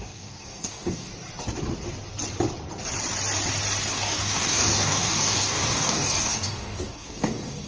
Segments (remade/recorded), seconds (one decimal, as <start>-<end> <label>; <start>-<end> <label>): 0.0-1.1 remade; 1.1-3.9 recorded; 3.9-7.7 remade